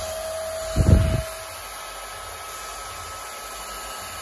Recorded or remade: recorded